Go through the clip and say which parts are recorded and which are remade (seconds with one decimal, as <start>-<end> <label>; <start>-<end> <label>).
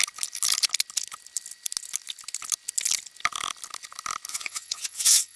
0.0-4.3 recorded; 4.3-5.4 remade